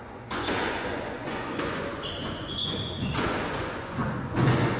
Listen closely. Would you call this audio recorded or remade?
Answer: remade